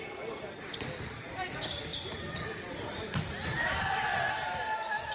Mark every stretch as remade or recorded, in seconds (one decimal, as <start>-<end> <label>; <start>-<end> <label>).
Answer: 0.0-1.9 recorded; 1.9-5.1 remade